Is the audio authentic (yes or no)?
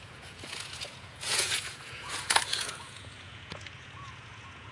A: no